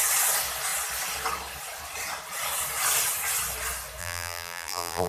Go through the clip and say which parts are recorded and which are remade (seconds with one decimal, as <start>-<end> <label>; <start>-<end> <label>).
0.0-4.0 recorded; 4.0-5.1 remade